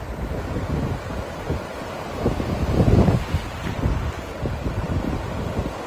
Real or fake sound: real